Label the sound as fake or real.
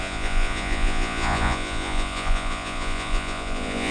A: fake